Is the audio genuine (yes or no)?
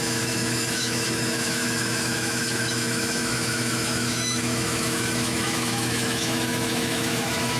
no